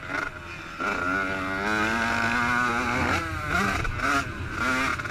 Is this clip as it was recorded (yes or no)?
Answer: yes